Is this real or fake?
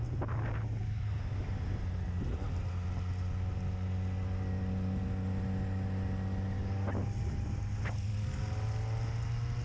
real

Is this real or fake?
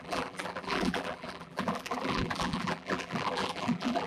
fake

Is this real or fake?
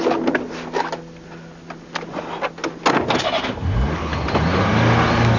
real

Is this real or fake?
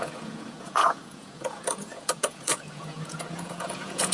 fake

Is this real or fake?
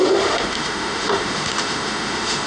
fake